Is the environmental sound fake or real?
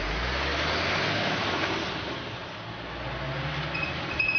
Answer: real